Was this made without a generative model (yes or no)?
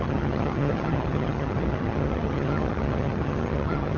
no